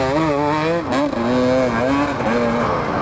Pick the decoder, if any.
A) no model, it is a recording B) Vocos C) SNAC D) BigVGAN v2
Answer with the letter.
A